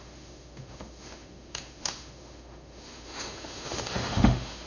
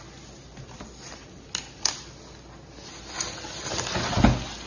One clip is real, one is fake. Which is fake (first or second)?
first